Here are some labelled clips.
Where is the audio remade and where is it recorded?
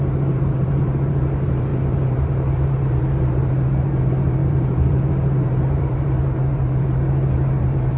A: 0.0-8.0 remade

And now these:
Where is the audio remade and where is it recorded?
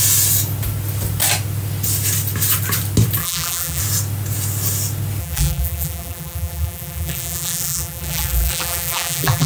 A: 0.0-3.2 recorded; 3.2-3.8 remade; 3.8-5.2 recorded; 5.2-9.5 remade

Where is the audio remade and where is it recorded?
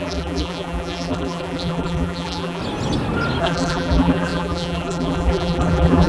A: 0.0-2.6 remade; 2.6-3.4 recorded; 3.4-6.1 remade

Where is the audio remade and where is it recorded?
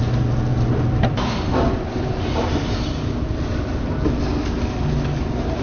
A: 0.0-0.5 recorded; 0.5-3.9 remade; 3.9-5.6 recorded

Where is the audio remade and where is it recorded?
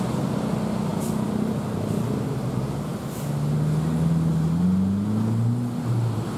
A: 0.0-0.9 recorded; 0.9-1.5 remade; 1.5-6.4 recorded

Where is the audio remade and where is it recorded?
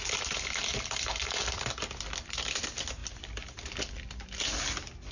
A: 0.0-3.0 recorded; 3.0-5.1 remade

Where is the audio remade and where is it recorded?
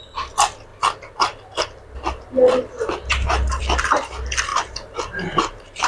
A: 0.0-4.5 recorded; 4.5-5.9 remade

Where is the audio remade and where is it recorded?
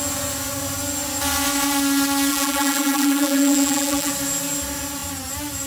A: 0.0-2.3 recorded; 2.3-4.1 remade; 4.1-5.7 recorded